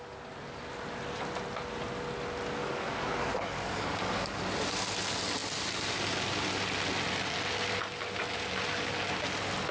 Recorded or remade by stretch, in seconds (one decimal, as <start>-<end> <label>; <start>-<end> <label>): 0.0-2.6 recorded; 2.6-4.4 remade; 4.4-9.7 recorded